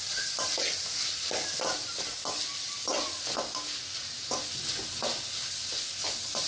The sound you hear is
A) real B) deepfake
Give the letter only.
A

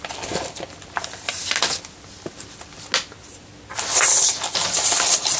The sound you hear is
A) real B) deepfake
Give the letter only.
A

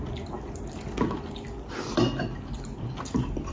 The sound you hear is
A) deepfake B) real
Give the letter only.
B